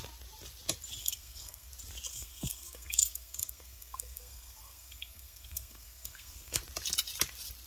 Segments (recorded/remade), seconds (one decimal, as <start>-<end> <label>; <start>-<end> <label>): 0.0-1.0 recorded; 1.0-1.7 remade; 1.7-2.1 recorded; 2.1-6.6 remade; 6.6-7.7 recorded